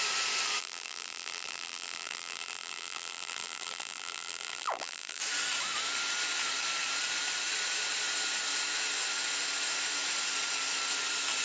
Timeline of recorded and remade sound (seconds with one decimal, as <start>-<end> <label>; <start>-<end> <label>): 0.0-0.6 recorded; 0.6-5.2 remade; 5.2-11.4 recorded